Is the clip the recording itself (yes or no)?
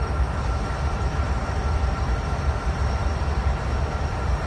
no